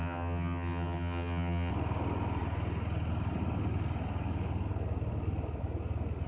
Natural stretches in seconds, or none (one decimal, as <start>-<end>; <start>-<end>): 1.7-6.3